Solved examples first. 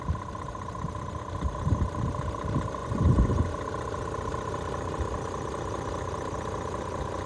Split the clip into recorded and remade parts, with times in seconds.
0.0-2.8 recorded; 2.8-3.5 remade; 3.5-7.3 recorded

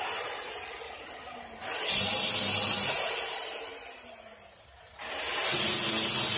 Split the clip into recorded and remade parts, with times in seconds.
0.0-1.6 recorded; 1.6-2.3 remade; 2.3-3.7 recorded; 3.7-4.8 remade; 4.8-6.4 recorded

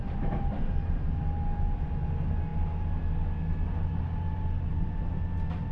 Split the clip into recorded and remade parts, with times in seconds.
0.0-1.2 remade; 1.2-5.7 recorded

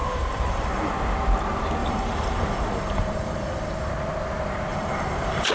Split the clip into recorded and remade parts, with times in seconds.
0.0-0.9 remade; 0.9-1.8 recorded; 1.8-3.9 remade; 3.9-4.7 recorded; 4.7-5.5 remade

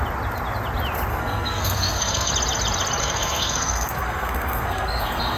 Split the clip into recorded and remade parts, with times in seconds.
0.0-1.1 recorded; 1.1-2.3 remade; 2.3-3.0 recorded; 3.0-5.4 remade

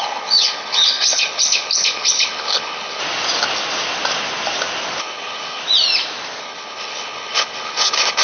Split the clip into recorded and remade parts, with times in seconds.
0.0-3.0 remade; 3.0-5.0 recorded; 5.0-5.6 remade; 5.6-6.4 recorded; 6.4-8.2 remade

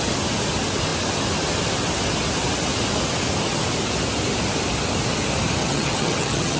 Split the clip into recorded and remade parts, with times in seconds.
0.0-5.6 recorded; 5.6-6.6 remade